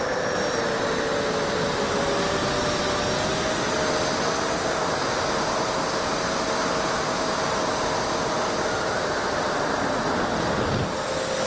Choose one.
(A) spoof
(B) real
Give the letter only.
B